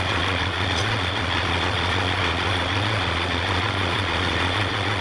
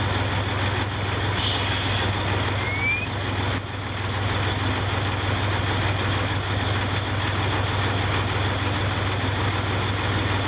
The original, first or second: second